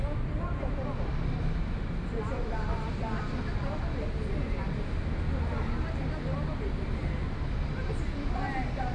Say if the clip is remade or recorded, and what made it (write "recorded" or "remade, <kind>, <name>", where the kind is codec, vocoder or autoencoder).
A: recorded